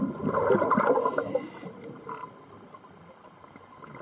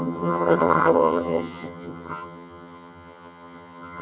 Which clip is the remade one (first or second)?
second